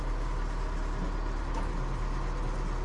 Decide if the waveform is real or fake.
real